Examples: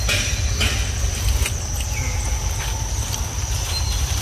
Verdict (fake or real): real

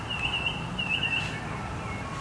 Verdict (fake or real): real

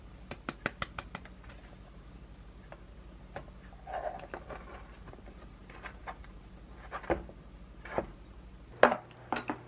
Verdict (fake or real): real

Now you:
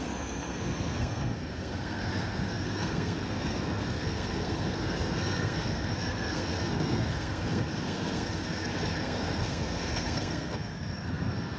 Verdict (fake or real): fake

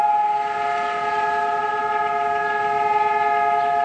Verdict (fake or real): real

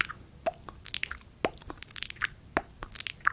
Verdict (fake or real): real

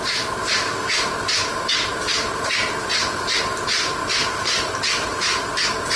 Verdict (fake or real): fake